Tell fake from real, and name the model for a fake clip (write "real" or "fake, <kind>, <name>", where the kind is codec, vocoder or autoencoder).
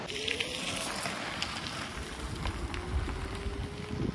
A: real